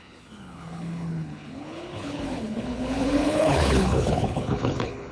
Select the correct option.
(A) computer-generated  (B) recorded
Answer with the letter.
A